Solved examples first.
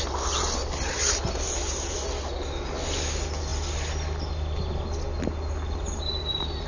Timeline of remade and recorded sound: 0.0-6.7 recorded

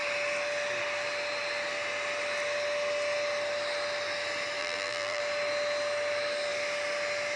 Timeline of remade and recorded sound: 0.0-4.6 recorded; 4.6-5.2 remade; 5.2-7.4 recorded

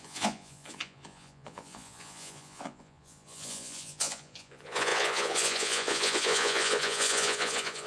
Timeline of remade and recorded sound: 0.0-7.9 remade

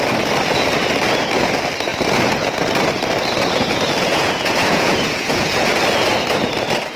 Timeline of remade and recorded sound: 0.0-4.1 recorded; 4.1-5.8 remade; 5.8-7.0 recorded

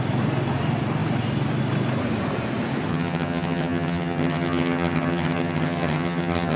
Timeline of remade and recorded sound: 0.0-2.9 recorded; 2.9-6.6 remade